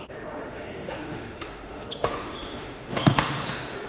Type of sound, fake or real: fake